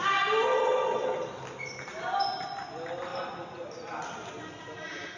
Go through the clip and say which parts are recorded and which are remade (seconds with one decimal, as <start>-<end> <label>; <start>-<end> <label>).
0.0-5.2 recorded